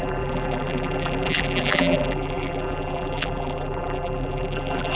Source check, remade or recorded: remade